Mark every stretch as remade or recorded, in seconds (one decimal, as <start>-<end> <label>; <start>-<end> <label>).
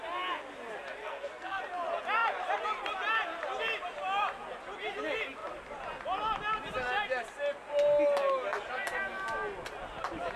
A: 0.0-1.0 recorded; 1.0-1.6 remade; 1.6-10.4 recorded